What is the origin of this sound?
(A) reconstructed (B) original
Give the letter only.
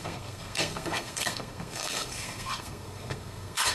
A